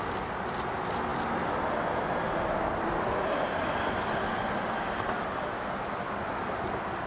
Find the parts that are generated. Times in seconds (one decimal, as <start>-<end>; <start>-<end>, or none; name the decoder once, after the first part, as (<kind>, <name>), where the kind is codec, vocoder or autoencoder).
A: none

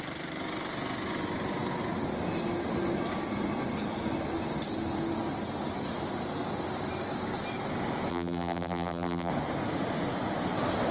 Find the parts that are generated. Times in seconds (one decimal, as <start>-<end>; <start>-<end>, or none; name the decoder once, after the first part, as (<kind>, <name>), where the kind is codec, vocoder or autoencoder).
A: 8.1-9.3 (vocoder, BigVGAN v2)

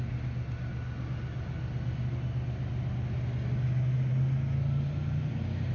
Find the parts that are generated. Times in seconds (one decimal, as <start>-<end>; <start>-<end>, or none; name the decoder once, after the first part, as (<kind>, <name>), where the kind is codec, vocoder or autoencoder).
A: none

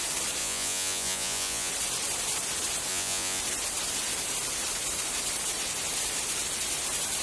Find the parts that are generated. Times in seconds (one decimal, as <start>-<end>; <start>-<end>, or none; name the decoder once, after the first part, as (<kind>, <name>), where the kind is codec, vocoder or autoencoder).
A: 0.4-1.7 (vocoder, Vocos); 2.9-3.4

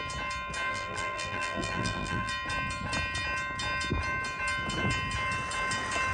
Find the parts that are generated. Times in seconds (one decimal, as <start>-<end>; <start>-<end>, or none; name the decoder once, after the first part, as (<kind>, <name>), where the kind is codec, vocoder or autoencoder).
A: 0.7-2.3 (vocoder, BigVGAN v2)

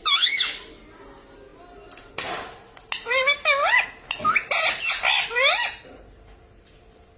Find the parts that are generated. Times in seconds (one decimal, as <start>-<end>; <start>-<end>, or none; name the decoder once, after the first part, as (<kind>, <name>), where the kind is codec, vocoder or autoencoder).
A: 0.0-0.6 (codec, DAC)